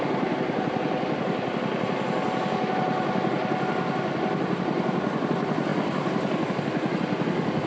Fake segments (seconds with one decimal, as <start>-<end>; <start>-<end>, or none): none